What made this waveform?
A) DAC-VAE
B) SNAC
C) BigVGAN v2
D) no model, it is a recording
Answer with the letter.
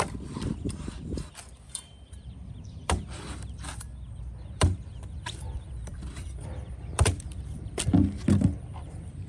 C